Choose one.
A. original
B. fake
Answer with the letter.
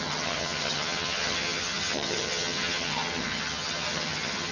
B